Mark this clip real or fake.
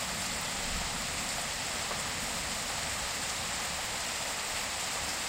real